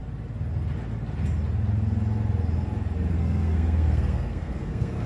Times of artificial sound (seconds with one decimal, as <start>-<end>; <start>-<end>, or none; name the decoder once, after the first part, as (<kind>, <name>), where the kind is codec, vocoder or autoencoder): 3.1-5.1 (codec, SNAC)